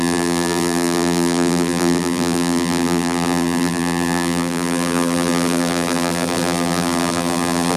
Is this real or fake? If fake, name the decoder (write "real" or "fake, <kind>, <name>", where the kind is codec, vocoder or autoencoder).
fake, vocoder, BigVGAN v2